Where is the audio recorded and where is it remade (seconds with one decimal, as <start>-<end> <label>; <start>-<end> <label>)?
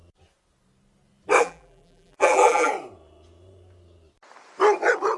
0.0-1.4 recorded; 1.4-2.7 remade; 2.7-5.2 recorded